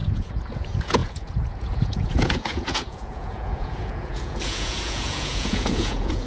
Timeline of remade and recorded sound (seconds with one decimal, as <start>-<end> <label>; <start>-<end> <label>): 0.0-6.3 remade